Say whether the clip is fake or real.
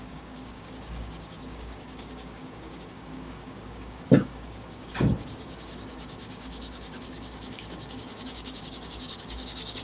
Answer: fake